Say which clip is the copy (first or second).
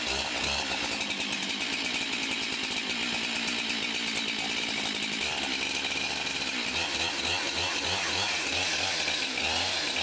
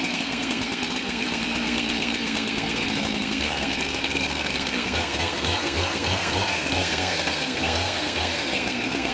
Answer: second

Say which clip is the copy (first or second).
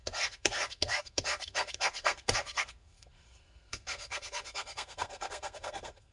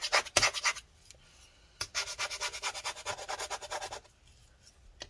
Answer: first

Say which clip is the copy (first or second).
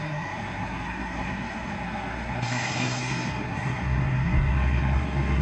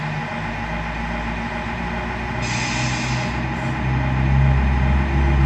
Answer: first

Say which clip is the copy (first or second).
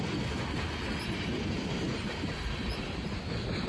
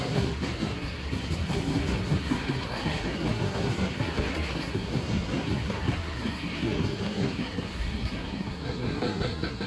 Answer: second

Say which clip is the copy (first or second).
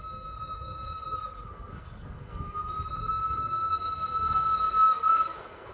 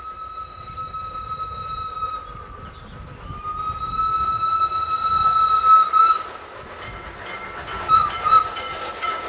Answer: first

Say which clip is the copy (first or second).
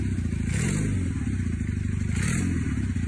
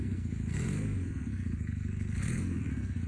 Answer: second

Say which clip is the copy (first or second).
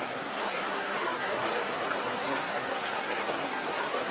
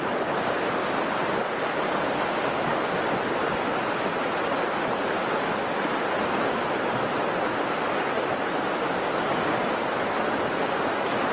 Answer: first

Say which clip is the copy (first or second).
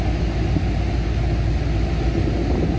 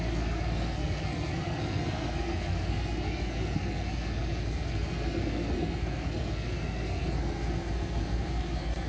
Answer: second